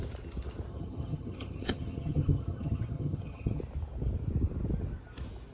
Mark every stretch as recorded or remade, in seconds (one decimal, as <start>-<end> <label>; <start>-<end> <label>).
0.0-0.7 recorded; 0.7-3.6 remade; 3.6-5.5 recorded